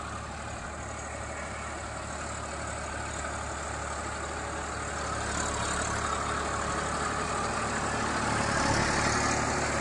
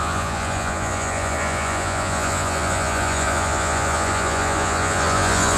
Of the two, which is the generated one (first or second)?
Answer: second